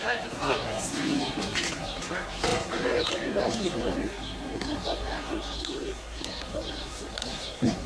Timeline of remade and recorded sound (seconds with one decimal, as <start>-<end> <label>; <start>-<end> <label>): 0.0-7.9 remade